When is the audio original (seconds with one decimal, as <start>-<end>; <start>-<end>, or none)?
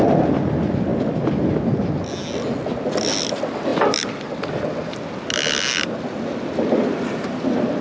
0.0-7.8